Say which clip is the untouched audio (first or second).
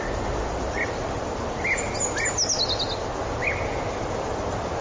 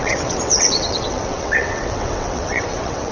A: first